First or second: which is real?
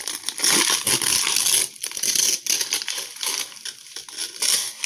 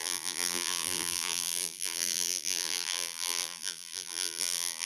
first